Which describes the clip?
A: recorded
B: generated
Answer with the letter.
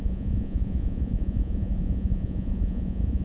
B